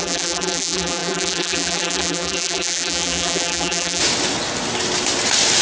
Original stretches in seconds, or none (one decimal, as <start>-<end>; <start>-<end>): 4.0-5.6